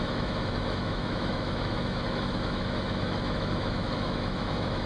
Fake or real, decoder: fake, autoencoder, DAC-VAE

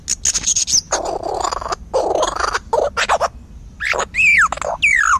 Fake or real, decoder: real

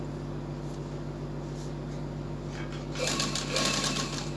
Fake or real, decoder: real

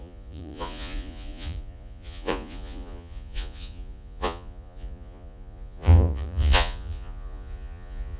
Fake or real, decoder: fake, vocoder, Vocos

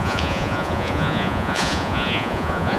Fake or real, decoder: fake, vocoder, Vocos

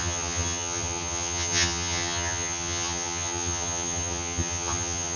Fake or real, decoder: fake, vocoder, HiFi-GAN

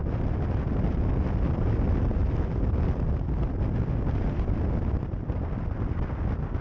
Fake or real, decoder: real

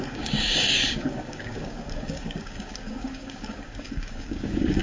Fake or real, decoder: fake, codec, DAC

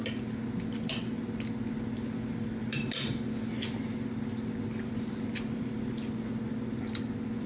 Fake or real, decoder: real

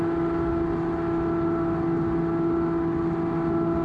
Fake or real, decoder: real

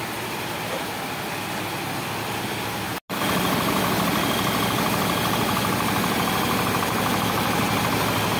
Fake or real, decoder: real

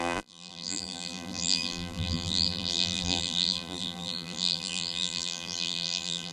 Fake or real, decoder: fake, vocoder, BigVGAN v2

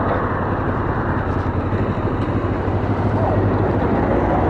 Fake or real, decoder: real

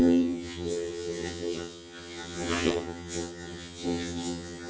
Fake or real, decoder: fake, vocoder, HiFi-GAN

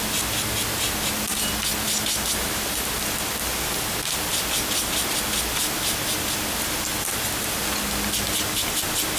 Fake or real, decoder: real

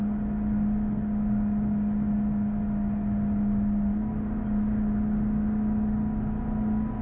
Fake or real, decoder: real